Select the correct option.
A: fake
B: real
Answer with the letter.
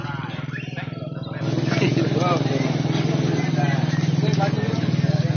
B